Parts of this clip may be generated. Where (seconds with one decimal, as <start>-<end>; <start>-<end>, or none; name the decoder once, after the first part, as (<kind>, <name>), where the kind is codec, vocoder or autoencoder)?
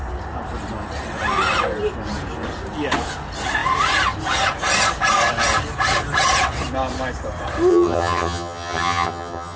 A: 7.7-9.6 (vocoder, HiFi-GAN)